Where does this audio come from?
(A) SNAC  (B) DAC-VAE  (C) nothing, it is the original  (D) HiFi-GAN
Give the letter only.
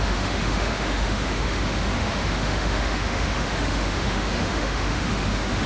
B